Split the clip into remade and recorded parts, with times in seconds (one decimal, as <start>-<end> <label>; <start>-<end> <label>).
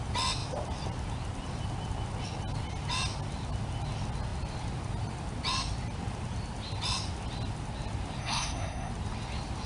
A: 0.0-8.2 recorded; 8.2-8.9 remade; 8.9-9.7 recorded